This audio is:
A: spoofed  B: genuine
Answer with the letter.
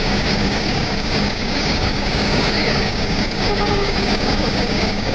A